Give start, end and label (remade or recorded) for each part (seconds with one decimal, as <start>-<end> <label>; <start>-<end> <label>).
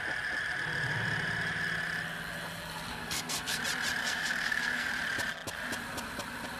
0.0-2.9 recorded; 2.9-3.6 remade; 3.6-4.0 recorded; 4.0-4.9 remade; 4.9-6.6 recorded